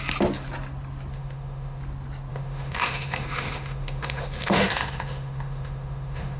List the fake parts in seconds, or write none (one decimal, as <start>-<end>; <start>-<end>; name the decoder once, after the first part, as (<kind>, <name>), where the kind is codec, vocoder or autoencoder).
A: 1.1-1.8 (autoencoder, DAC-VAE); 2.3-6.4